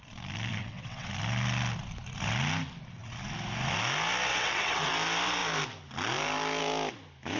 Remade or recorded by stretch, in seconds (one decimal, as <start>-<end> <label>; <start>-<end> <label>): 0.0-0.5 recorded; 0.5-1.1 remade; 1.1-4.3 recorded; 4.3-4.9 remade; 4.9-7.4 recorded